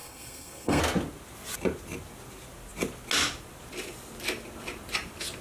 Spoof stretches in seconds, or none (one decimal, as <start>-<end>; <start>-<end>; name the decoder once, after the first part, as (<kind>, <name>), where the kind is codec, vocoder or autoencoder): 0.0-0.8 (codec, SNAC)